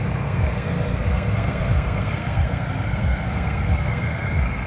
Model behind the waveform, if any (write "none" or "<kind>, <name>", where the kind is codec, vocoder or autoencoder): codec, SNAC